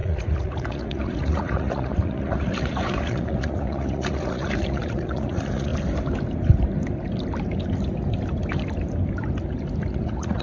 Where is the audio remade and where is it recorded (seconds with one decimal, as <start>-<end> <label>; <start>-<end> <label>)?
0.0-5.7 remade; 5.7-9.9 recorded; 9.9-10.4 remade